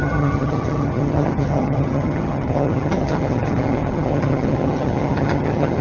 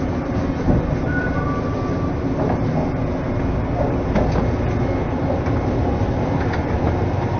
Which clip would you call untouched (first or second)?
second